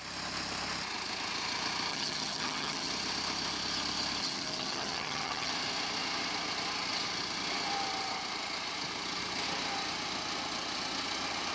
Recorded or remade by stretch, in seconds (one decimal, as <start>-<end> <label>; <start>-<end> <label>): 0.0-1.9 recorded; 1.9-2.9 remade; 2.9-4.2 recorded; 4.2-5.5 remade; 5.5-11.5 recorded